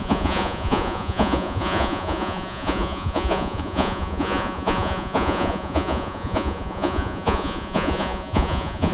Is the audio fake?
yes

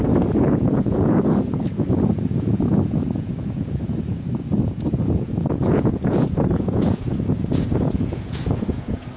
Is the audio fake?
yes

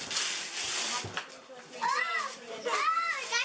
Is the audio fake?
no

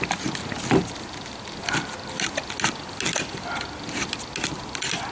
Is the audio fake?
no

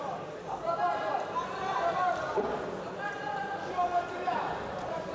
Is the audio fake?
no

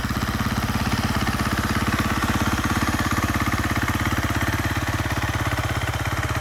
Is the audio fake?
no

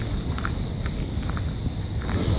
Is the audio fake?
no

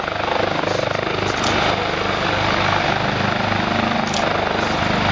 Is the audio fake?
no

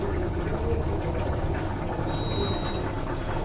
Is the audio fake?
no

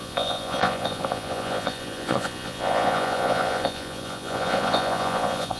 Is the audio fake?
yes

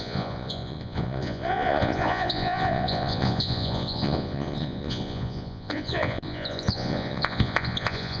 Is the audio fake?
yes